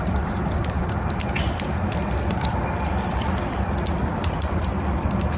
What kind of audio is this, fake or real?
fake